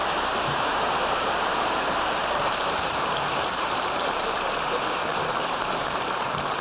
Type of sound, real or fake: fake